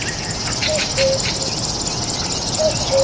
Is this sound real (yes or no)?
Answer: yes